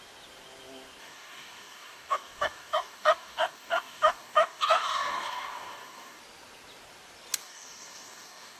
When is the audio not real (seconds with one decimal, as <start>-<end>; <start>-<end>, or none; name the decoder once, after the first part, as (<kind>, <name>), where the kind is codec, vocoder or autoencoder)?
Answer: 1.0-6.2 (codec, DAC); 7.4-8.6

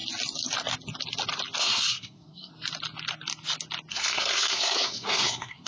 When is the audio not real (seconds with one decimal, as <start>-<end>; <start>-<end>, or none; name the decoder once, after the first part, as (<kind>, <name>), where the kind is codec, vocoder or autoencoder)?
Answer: 1.6-2.5 (codec, SNAC); 3.9-5.7

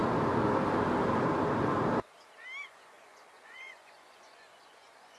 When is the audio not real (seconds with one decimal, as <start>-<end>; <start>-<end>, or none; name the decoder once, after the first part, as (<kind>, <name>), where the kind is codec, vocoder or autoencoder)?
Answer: 2.6-5.2 (vocoder, Vocos)

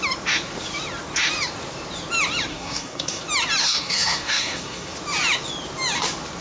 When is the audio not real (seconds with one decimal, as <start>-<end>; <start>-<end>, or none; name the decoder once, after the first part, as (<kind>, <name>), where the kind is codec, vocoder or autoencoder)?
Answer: 2.5-3.2 (codec, SNAC); 3.6-4.9

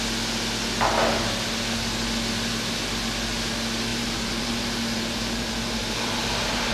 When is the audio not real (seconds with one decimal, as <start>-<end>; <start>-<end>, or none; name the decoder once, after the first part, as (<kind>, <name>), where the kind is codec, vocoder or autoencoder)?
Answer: 3.9-6.7 (vocoder, BigVGAN v2)

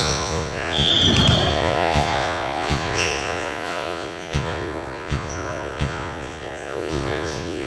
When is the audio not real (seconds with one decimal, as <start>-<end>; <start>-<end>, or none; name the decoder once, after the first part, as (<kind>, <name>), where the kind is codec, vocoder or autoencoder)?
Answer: 0.0-0.9 (vocoder, Vocos); 1.5-7.7